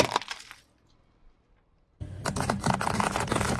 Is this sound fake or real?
real